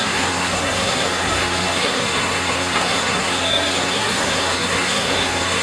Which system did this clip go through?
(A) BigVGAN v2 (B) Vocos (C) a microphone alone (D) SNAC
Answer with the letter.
D